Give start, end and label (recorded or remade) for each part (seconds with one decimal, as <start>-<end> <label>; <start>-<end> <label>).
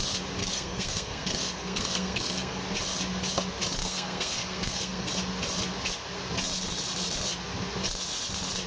0.0-0.4 recorded; 0.4-2.6 remade; 2.6-3.8 recorded; 3.8-5.1 remade; 5.1-8.7 recorded